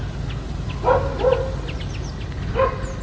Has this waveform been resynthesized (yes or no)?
no